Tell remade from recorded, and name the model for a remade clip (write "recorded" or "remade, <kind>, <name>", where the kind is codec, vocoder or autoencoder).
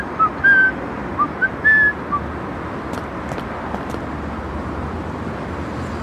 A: recorded